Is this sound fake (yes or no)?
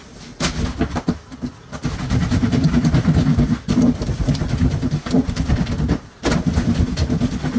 no